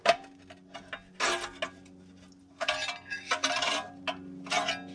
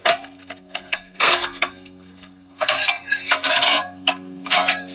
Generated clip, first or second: second